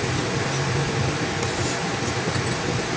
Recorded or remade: recorded